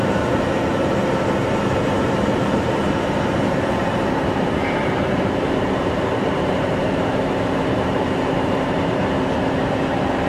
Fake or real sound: fake